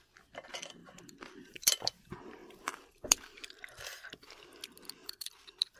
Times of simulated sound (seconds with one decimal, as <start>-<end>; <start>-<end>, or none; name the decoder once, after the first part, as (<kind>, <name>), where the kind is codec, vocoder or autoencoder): 0.8-2.0 (vocoder, BigVGAN v2); 2.4-4.1; 5.0-5.8